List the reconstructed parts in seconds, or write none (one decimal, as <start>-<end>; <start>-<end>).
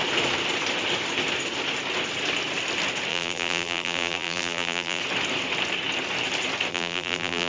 3.1-5.0; 6.7-7.5